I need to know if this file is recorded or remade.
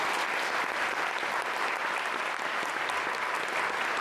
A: recorded